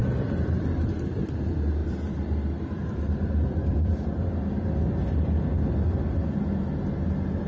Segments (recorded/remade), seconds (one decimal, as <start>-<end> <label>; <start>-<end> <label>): 0.0-1.1 remade; 1.1-1.8 recorded; 1.8-4.3 remade; 4.3-7.5 recorded